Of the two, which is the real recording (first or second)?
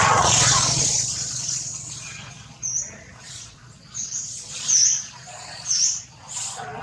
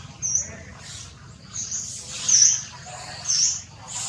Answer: second